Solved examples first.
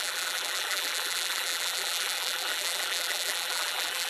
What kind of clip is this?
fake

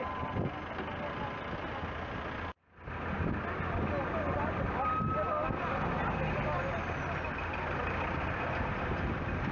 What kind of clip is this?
real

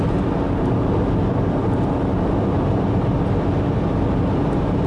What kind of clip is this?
real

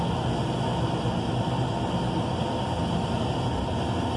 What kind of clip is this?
real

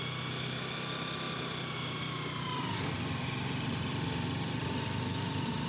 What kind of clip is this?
real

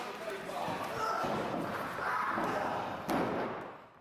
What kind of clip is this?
real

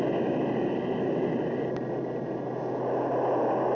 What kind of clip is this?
real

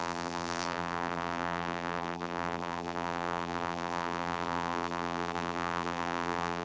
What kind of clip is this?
fake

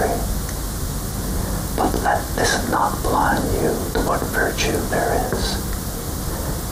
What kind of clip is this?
real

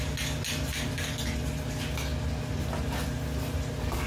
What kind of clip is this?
real